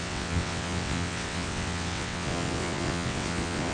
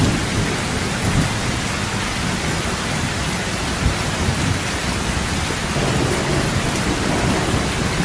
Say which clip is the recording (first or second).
second